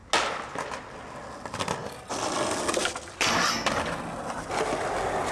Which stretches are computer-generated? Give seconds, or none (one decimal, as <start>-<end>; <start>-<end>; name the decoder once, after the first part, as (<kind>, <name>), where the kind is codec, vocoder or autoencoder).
none